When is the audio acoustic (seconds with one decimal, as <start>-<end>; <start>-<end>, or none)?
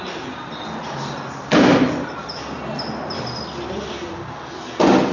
0.0-5.1